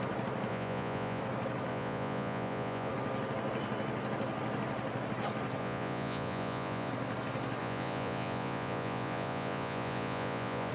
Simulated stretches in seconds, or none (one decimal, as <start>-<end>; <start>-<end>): 0.5-1.2; 1.7-2.9; 5.6-6.9; 7.6-10.7